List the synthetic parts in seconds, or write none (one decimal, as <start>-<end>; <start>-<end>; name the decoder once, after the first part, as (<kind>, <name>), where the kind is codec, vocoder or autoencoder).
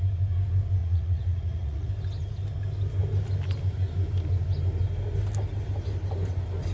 0.8-1.9 (vocoder, Vocos)